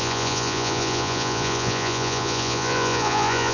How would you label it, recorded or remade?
remade